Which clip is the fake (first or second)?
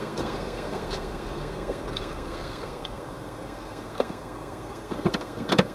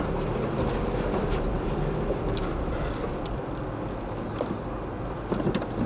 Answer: first